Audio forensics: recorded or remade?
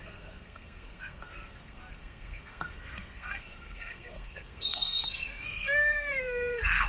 remade